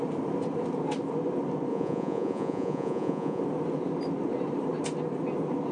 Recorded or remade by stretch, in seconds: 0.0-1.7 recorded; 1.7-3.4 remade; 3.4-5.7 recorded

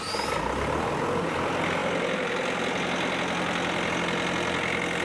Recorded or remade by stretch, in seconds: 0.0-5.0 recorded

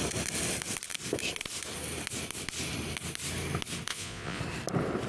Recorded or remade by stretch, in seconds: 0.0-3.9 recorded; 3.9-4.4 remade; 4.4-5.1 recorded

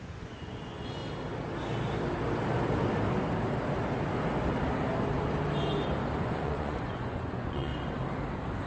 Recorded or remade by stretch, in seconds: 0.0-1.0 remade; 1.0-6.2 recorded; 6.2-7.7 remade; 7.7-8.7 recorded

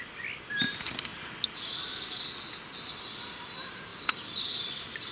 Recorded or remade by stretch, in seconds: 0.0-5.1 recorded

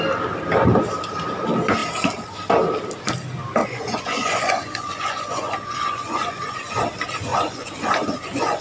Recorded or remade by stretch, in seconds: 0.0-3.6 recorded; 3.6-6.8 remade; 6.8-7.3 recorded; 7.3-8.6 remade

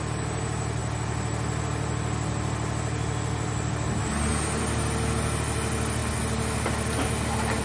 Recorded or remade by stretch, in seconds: 0.0-7.6 recorded